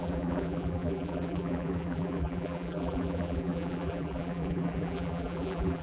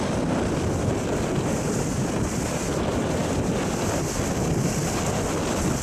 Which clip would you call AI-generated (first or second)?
first